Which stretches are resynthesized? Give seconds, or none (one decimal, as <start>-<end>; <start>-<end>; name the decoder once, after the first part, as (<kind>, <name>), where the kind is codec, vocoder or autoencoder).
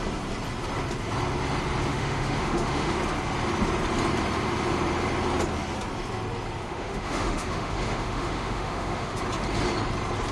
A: 1.9-3.0 (autoencoder, DAC-VAE); 6.6-9.2